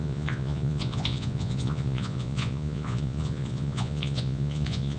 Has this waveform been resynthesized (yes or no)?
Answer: yes